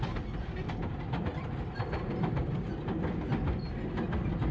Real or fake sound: real